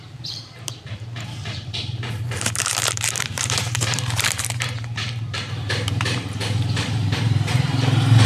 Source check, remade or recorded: remade